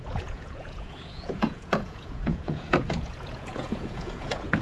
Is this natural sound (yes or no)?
no